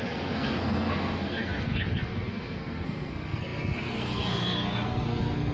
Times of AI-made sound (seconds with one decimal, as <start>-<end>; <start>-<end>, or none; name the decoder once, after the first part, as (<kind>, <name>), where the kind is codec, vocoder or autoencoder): 0.0-5.5 (codec, SNAC)